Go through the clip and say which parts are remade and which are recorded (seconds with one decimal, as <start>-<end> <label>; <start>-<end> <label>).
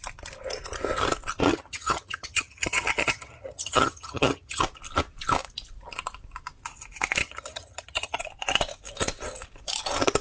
0.0-1.5 recorded; 1.5-4.6 remade; 4.6-7.2 recorded; 7.2-8.2 remade; 8.2-10.2 recorded